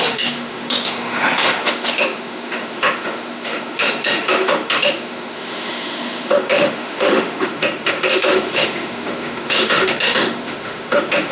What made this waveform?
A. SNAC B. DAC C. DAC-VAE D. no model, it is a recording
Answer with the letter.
C